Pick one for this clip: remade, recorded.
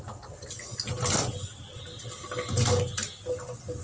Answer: recorded